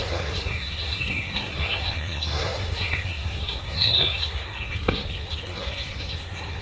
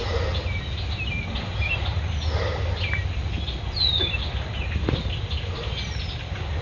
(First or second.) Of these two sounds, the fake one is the first